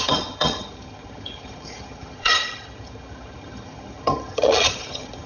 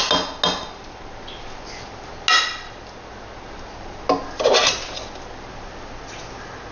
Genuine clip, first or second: second